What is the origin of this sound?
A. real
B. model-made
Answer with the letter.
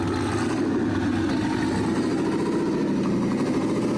A